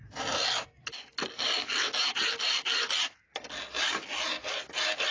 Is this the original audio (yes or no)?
yes